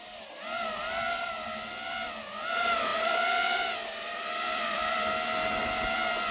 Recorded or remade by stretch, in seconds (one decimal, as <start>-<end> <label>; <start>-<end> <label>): 0.0-2.9 recorded; 2.9-5.1 remade; 5.1-6.3 recorded